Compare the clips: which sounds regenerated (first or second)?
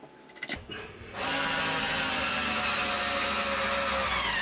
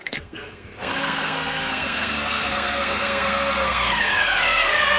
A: second